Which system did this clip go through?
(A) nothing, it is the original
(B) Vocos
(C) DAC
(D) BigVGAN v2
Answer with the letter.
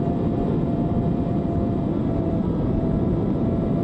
D